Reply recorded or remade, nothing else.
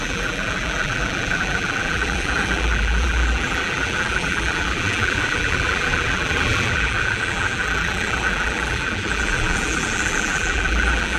remade